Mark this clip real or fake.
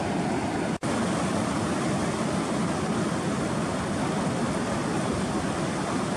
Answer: real